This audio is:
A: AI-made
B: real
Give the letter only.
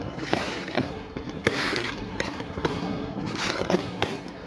A